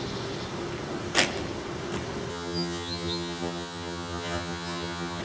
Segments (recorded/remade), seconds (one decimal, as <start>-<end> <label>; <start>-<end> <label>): 0.0-2.3 recorded; 2.3-5.2 remade